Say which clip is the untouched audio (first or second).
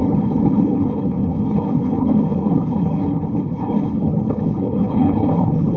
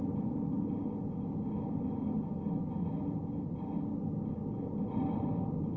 second